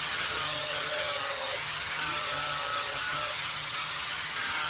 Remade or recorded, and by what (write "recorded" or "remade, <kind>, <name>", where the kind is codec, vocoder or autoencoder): remade, vocoder, HiFi-GAN